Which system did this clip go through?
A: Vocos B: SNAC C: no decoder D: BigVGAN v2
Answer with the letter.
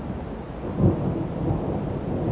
C